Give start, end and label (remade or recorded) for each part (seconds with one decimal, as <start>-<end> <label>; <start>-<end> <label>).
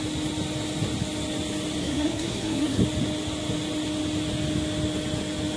0.0-1.8 recorded; 1.8-2.8 remade; 2.8-5.6 recorded